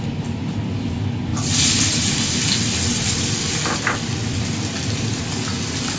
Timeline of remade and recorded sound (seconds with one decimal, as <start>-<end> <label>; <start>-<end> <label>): 0.0-6.0 recorded